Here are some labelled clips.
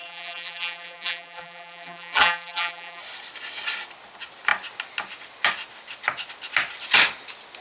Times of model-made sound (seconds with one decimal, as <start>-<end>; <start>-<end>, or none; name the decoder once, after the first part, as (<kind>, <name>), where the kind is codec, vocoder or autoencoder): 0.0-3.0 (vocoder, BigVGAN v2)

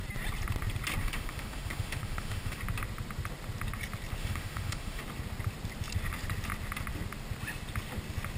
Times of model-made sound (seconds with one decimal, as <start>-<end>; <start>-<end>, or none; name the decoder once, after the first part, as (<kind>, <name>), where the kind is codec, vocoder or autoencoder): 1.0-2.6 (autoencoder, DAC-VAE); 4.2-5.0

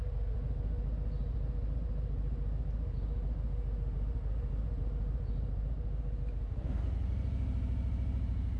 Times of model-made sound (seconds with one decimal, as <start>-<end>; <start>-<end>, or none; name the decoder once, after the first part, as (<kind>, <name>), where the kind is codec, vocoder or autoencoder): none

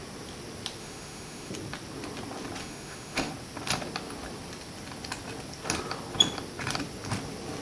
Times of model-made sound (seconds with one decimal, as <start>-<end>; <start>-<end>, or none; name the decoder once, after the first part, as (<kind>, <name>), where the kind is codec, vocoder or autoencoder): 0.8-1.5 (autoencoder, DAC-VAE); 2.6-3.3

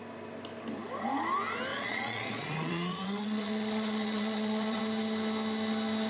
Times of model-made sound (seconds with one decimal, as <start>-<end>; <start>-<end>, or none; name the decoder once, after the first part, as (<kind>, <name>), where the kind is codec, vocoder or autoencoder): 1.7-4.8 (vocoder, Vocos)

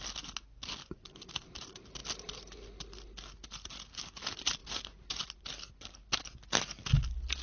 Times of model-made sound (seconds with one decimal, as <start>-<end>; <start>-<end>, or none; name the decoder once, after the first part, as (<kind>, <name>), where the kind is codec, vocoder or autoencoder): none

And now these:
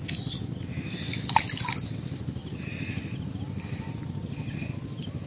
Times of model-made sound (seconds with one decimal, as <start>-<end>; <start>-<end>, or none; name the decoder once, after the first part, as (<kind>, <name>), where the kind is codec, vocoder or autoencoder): none